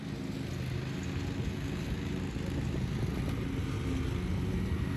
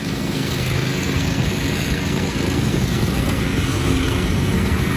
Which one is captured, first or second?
first